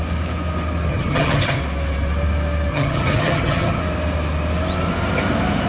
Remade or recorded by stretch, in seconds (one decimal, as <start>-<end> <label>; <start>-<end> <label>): 0.0-0.9 recorded; 0.9-1.6 remade; 1.6-2.7 recorded; 2.7-3.8 remade; 3.8-5.7 recorded